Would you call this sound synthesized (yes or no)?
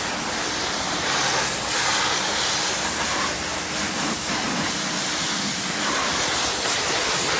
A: no